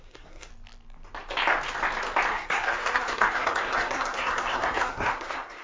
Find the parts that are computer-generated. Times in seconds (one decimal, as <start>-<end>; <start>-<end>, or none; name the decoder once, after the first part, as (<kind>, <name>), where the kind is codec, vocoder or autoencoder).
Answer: 0.0-0.5 (codec, SNAC); 2.3-5.6